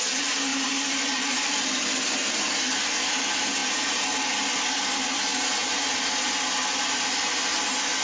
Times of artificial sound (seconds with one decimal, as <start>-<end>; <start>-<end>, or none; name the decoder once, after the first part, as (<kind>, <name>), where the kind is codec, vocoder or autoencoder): none